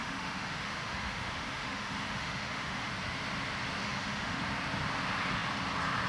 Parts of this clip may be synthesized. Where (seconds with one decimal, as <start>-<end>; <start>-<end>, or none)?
0.0-2.9; 3.8-4.4